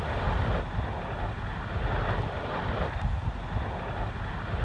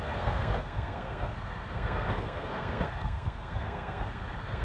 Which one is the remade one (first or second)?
second